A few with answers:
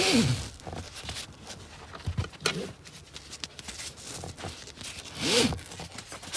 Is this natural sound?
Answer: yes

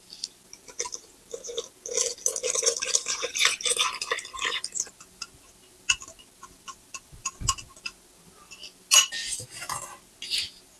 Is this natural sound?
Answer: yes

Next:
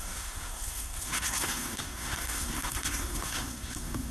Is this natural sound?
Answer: no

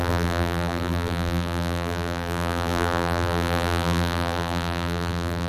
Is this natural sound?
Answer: no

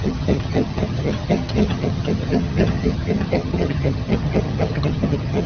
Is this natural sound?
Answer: no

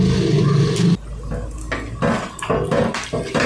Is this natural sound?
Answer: yes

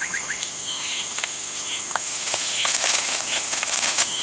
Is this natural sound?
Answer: no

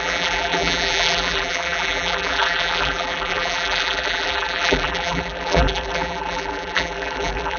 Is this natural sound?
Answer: no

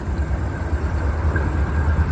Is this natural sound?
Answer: yes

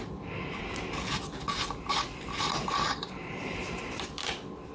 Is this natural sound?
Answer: no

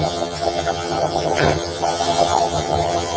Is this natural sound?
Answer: no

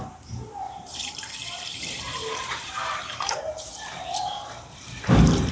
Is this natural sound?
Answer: no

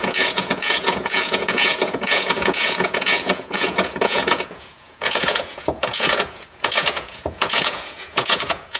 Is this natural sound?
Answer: no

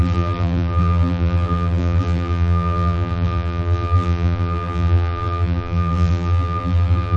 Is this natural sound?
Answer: no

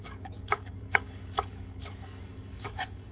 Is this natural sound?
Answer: no